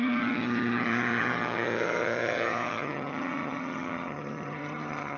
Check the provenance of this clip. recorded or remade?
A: remade